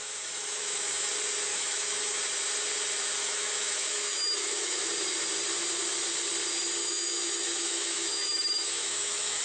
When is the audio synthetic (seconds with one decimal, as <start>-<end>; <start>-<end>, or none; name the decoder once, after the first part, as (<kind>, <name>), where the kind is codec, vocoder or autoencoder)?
0.0-1.1 (autoencoder, DAC-VAE); 1.5-2.2; 3.2-4.9; 6.8-9.4